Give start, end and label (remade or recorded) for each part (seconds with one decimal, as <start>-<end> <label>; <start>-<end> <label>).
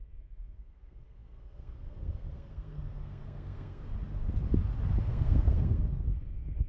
0.0-3.8 remade; 3.8-5.0 recorded; 5.0-6.7 remade